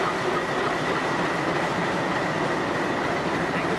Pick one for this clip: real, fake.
real